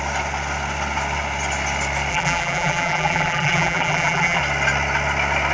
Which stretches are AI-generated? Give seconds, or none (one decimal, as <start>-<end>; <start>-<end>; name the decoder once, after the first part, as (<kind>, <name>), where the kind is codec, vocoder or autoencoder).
2.1-4.4 (vocoder, BigVGAN v2)